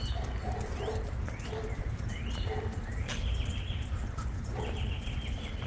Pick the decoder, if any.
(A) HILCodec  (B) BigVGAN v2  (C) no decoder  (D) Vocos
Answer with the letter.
C